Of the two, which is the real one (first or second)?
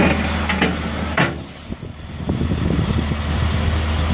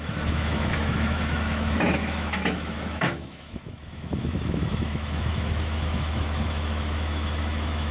first